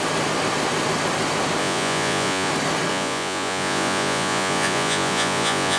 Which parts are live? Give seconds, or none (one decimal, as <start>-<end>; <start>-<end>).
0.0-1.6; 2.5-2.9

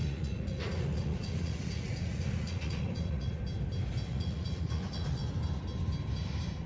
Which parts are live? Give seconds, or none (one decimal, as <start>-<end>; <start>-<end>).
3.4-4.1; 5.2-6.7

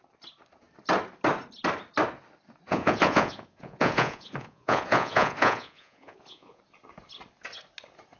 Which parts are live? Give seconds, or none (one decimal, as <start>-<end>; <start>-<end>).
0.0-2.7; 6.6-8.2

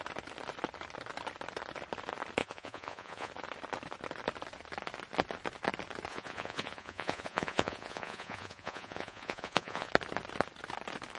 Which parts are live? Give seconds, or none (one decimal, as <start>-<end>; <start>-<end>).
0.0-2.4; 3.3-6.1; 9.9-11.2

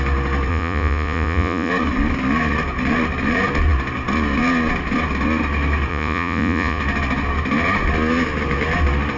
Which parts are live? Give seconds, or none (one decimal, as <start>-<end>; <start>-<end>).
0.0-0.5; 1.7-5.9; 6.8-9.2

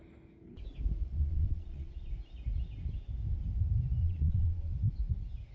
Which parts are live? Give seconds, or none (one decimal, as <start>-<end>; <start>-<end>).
0.0-1.0; 2.1-4.0; 4.7-5.5